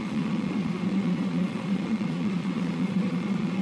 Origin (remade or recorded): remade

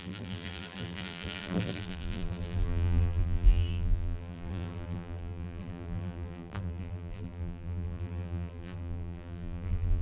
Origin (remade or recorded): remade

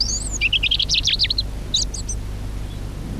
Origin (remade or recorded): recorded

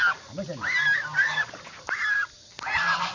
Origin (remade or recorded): recorded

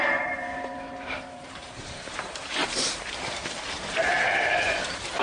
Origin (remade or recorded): remade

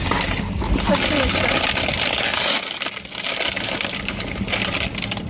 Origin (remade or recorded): recorded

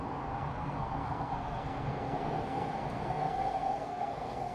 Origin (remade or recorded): remade